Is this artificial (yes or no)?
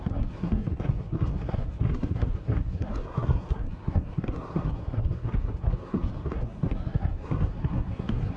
yes